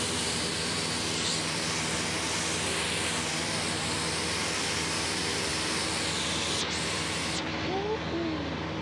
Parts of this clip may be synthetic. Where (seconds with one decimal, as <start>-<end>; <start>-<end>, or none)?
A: none